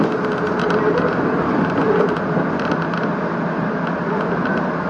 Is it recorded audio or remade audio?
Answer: recorded